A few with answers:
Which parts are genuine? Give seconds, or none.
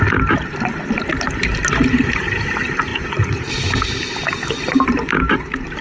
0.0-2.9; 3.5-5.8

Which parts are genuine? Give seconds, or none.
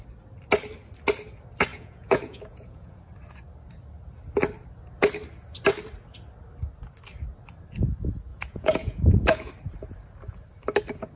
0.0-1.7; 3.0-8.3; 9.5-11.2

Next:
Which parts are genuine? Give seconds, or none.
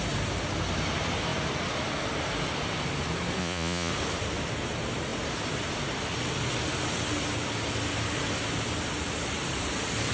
0.0-3.4; 3.9-10.1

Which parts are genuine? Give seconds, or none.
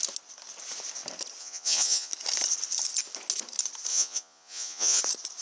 0.0-1.4; 2.1-3.9; 5.0-5.4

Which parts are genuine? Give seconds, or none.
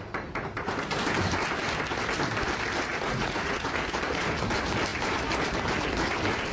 0.0-2.9; 3.7-6.5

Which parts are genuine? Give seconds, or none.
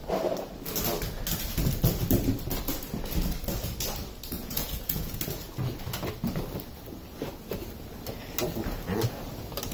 0.0-4.4; 5.2-9.7